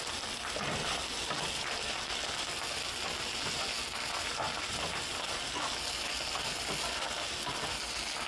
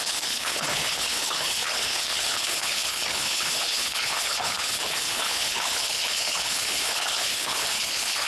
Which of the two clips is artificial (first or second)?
second